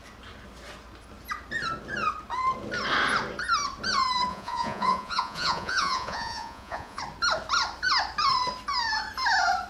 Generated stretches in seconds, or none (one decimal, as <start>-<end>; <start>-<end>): 4.3-7.0